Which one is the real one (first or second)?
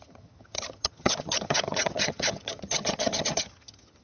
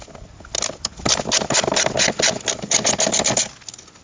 second